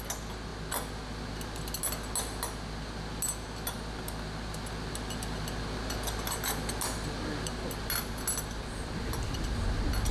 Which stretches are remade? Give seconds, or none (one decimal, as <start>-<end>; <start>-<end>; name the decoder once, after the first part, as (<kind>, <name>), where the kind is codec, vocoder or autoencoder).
none